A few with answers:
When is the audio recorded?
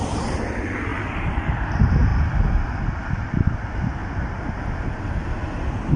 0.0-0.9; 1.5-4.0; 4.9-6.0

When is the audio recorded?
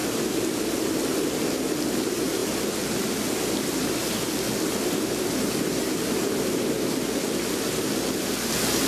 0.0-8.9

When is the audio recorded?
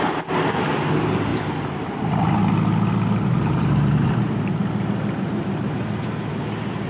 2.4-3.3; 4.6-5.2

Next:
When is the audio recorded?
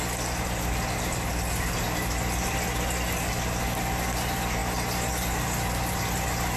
0.0-6.6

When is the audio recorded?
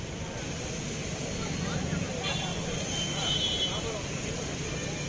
0.0-1.0; 2.1-2.5; 4.6-5.1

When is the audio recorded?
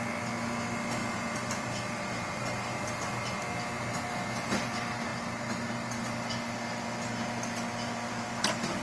0.0-1.0; 3.2-8.8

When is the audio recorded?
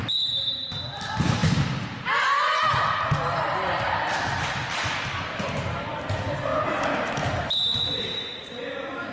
0.0-9.1